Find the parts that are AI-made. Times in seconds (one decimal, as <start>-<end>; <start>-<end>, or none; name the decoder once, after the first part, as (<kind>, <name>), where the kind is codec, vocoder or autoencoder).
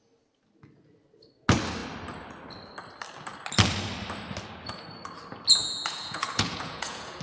5.6-7.2 (vocoder, Vocos)